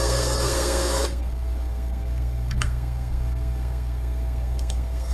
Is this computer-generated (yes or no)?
yes